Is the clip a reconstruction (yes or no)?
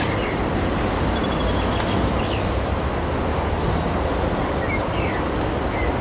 no